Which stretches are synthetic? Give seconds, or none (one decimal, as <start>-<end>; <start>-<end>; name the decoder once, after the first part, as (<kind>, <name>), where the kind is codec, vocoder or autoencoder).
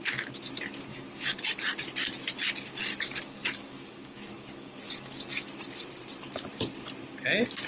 0.9-1.4 (codec, DAC); 2.9-5.5